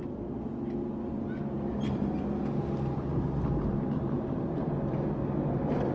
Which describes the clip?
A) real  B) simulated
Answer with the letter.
B